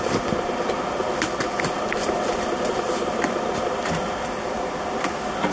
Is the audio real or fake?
real